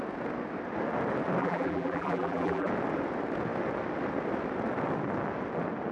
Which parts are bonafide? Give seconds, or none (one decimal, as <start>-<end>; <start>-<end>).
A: 0.0-1.4; 2.7-5.9